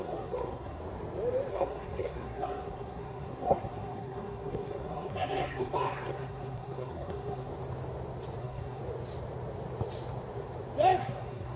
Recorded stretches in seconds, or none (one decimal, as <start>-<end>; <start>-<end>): 0.8-1.5; 7.5-8.4; 8.8-11.0